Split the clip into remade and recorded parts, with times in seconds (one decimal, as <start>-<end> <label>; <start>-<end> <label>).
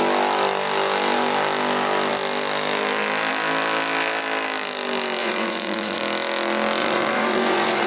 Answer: 0.0-5.2 recorded; 5.2-6.0 remade; 6.0-6.8 recorded; 6.8-7.9 remade